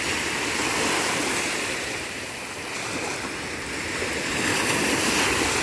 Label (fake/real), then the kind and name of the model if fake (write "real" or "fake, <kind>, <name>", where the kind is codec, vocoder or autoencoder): real